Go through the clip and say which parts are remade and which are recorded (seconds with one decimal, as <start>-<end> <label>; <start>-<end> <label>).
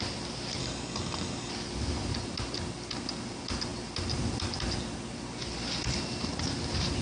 0.0-0.6 recorded; 0.6-1.5 remade; 1.5-7.0 recorded